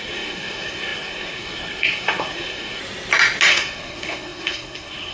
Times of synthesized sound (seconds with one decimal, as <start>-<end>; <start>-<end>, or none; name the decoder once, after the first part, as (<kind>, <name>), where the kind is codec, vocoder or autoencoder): 0.0-2.8 (codec, SNAC); 3.5-5.1